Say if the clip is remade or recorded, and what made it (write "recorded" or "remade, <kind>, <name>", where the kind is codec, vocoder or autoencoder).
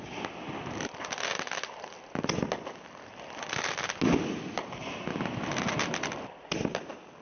recorded